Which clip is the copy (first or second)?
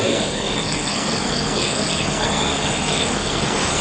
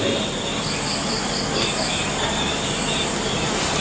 first